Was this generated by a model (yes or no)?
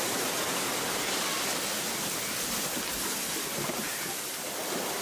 no